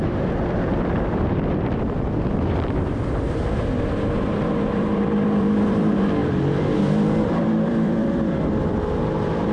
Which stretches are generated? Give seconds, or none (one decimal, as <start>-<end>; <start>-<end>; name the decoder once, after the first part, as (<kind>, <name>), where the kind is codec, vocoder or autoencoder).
0.0-9.5 (vocoder, BigVGAN v2)